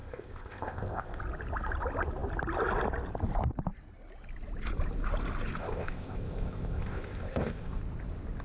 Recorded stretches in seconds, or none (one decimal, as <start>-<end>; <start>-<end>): 1.2-5.6; 7.8-8.4